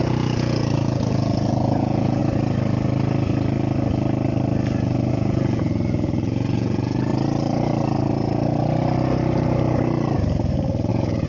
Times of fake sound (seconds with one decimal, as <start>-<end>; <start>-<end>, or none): 0.0-2.2; 5.1-7.1; 10.9-11.3